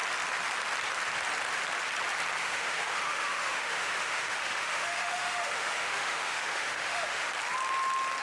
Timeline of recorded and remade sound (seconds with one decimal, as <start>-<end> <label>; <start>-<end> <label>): 0.0-2.4 recorded; 2.4-7.3 remade; 7.3-8.2 recorded